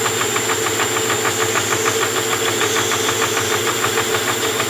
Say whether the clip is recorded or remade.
recorded